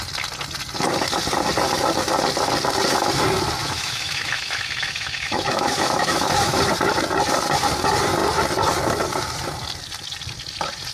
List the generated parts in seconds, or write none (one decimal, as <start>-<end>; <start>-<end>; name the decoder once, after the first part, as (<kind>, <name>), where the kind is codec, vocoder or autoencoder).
3.6-6.6 (autoencoder, DAC-VAE)